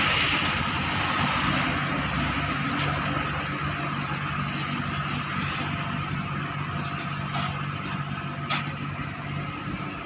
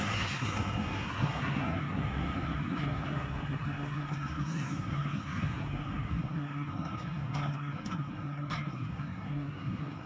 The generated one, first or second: second